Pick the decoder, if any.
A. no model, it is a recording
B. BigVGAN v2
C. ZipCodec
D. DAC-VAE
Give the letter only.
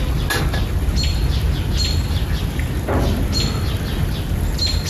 A